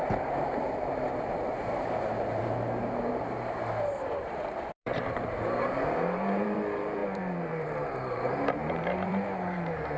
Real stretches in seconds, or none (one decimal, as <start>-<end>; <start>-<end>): none